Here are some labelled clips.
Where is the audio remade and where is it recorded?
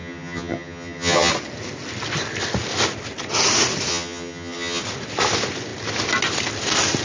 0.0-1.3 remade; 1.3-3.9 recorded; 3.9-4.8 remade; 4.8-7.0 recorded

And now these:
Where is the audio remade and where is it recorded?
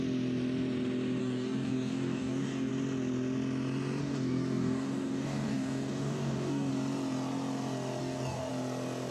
0.0-1.2 recorded; 1.2-2.7 remade; 2.7-4.0 recorded; 4.0-6.7 remade; 6.7-8.0 recorded; 8.0-8.5 remade; 8.5-9.1 recorded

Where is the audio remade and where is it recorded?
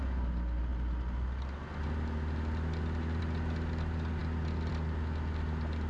0.0-5.9 recorded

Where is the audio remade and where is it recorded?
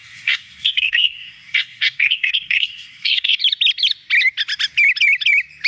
0.0-3.4 remade; 3.4-5.7 recorded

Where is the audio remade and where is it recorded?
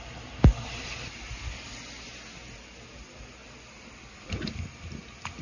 0.0-5.4 recorded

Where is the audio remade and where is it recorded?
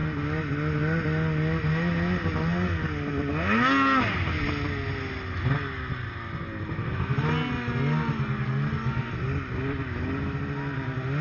0.0-11.2 recorded